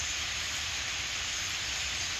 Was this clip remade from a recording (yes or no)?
yes